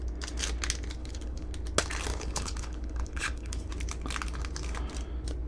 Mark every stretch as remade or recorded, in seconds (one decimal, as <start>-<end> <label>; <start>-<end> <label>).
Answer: 0.0-1.0 recorded; 1.0-1.5 remade; 1.5-2.1 recorded; 2.1-3.7 remade; 3.7-5.5 recorded